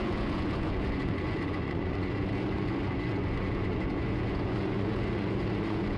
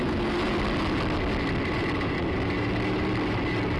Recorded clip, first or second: second